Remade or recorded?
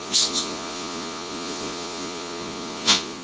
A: remade